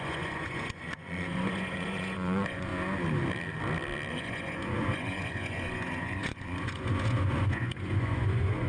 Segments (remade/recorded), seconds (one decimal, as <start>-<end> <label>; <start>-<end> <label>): 0.0-2.7 remade; 2.7-4.1 recorded; 4.1-8.7 remade